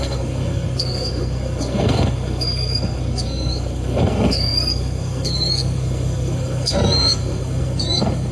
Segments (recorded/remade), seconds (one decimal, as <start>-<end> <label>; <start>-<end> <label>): 0.0-8.3 remade